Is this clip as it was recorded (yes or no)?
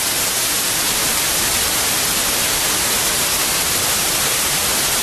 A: yes